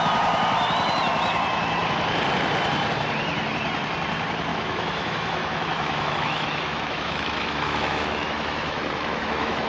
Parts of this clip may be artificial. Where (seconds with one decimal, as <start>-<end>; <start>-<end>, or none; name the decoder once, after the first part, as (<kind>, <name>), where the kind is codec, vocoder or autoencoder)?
4.5-9.7 (autoencoder, DAC-VAE)